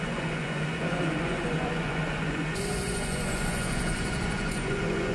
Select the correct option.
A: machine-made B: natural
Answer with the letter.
A